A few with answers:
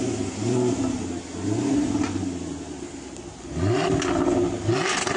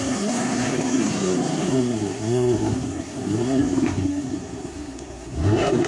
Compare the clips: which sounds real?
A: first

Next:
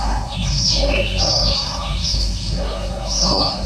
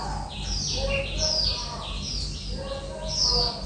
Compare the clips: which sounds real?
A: second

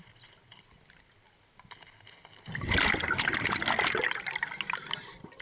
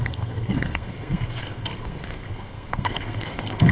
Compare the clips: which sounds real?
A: first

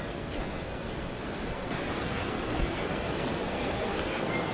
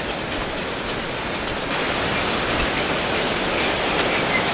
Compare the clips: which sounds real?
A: second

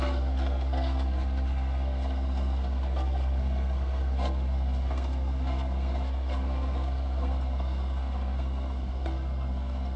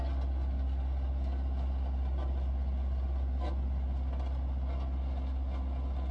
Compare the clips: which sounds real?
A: second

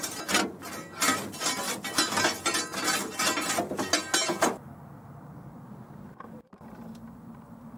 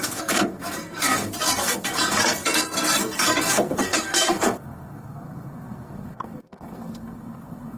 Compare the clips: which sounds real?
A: first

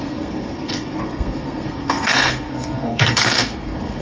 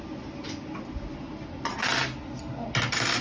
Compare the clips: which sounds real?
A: second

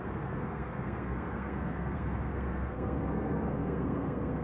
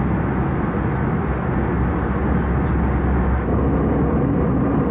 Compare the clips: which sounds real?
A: second